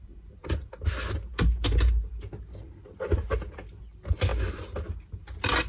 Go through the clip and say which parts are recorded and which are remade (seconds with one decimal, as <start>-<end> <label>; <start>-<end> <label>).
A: 0.0-5.7 recorded